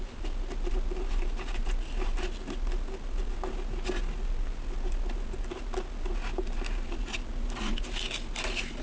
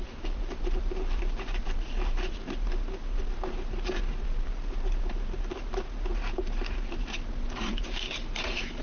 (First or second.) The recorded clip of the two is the first